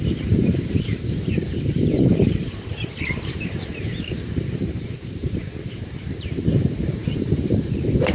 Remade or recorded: remade